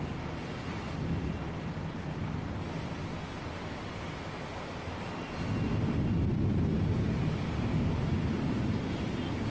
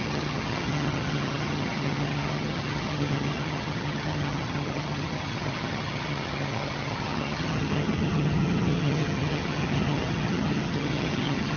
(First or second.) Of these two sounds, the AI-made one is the second